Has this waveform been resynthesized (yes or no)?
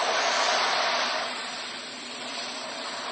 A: no